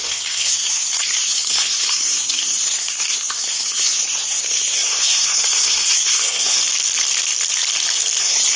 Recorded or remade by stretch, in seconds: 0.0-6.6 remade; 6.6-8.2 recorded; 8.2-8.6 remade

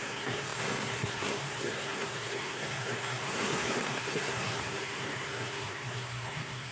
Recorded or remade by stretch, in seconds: 0.0-6.7 remade

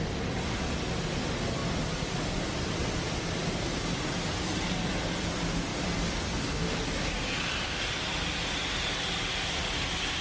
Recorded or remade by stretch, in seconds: 0.0-10.2 recorded

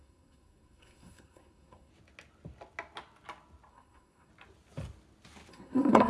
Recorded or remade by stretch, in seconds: 0.0-1.9 remade; 1.9-3.7 recorded; 3.7-4.3 remade; 4.3-5.5 recorded; 5.5-6.1 remade